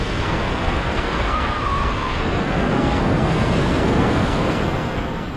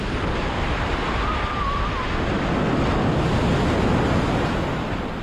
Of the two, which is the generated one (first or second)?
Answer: first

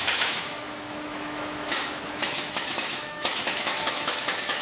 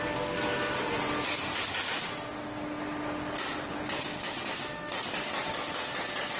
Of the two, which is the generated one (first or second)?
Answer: first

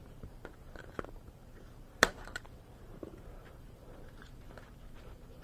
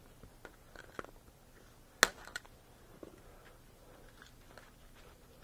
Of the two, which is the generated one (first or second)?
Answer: first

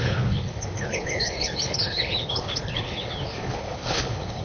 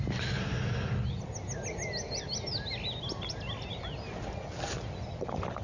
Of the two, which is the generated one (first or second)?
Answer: first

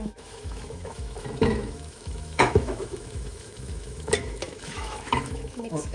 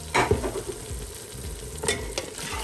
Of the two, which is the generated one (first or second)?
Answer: first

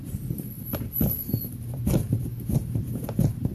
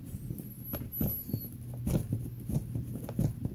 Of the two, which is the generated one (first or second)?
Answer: first